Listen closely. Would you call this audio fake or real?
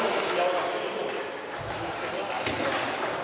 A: real